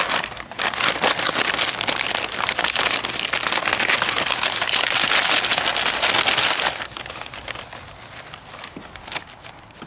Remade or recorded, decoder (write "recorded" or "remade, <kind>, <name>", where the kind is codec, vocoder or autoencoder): recorded